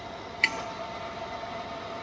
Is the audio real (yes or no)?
yes